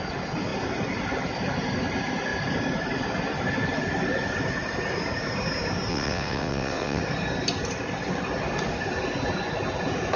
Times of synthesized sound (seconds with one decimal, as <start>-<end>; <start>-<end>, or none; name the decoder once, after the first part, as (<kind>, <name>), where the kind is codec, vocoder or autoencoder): 5.9-7.0 (vocoder, WaveNeXt)